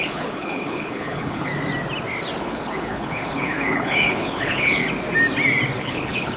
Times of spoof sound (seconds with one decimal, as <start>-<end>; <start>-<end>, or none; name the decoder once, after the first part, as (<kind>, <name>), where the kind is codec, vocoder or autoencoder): 0.0-1.5 (codec, HILCodec); 2.4-4.8; 5.7-6.4